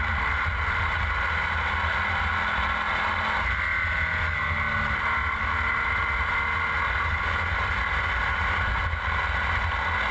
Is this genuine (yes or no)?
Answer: yes